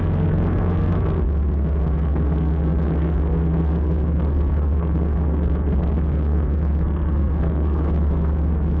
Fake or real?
fake